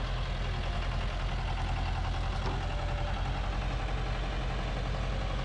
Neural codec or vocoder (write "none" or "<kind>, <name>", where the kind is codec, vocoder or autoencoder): none